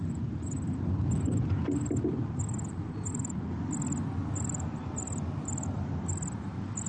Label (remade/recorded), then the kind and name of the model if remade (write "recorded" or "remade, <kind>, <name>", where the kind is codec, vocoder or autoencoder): recorded